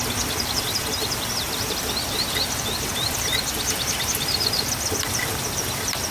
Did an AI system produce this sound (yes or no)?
yes